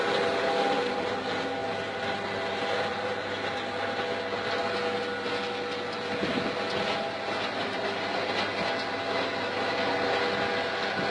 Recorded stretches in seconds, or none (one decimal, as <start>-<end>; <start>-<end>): 0.0-11.1